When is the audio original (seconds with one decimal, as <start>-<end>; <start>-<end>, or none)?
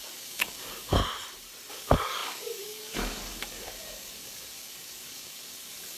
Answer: 1.0-1.7